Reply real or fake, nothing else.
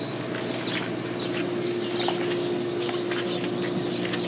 real